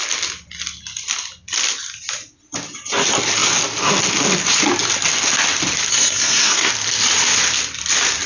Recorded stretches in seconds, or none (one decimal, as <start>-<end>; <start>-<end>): 0.0-5.9; 6.7-8.3